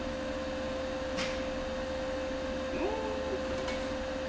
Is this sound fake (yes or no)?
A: no